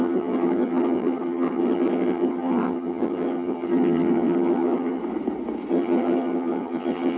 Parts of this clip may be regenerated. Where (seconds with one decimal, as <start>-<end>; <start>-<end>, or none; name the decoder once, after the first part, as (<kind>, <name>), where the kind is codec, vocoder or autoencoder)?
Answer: 0.0-5.0 (vocoder, HiFi-GAN); 5.7-7.2